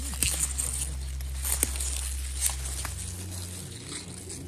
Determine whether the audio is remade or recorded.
recorded